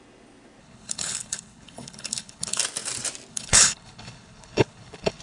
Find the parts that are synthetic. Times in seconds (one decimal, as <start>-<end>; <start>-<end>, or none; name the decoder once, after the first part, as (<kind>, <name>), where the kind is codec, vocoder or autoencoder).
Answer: 0.6-2.6 (codec, HILCodec); 3.3-5.2